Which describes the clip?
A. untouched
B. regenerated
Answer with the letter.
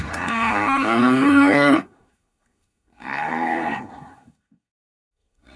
B